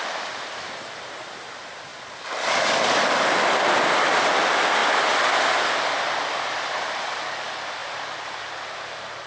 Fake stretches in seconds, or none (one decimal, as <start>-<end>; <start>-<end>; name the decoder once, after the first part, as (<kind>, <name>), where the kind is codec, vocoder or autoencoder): 1.9-4.2 (vocoder, BigVGAN v2)